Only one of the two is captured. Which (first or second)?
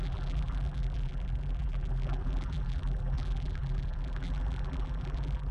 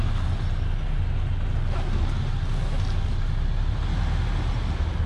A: second